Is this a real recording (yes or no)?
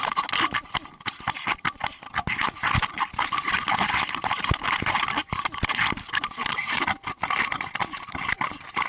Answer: yes